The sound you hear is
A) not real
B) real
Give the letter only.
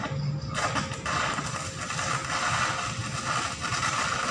B